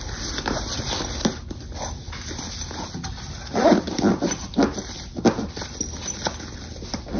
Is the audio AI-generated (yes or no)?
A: no